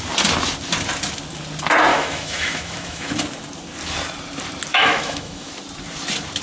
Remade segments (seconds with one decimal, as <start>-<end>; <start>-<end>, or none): 1.9-3.1; 4.7-5.5